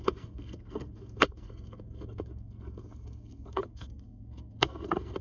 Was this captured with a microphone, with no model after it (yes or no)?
no